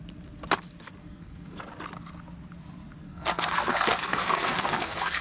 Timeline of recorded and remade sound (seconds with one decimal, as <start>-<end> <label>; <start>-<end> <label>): 0.0-1.0 recorded; 1.0-1.6 remade; 1.6-3.0 recorded; 3.0-5.2 remade